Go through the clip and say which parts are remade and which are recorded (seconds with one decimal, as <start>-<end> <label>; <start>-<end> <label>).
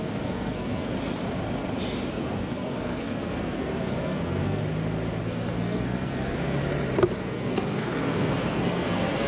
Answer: 0.0-0.9 remade; 0.9-2.1 recorded; 2.1-4.6 remade; 4.6-5.2 recorded; 5.2-6.6 remade; 6.6-7.2 recorded; 7.2-9.3 remade